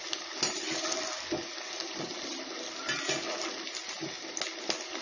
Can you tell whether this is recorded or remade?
recorded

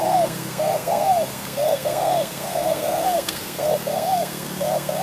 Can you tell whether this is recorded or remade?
remade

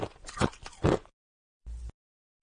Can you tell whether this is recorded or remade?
recorded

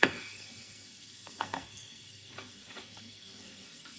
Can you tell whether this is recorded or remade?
remade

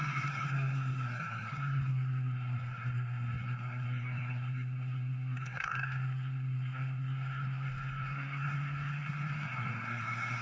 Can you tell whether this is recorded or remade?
remade